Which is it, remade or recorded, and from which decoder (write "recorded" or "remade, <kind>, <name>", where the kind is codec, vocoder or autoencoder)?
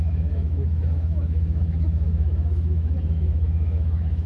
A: remade, autoencoder, DAC-VAE